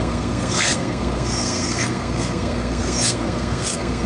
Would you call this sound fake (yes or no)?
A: yes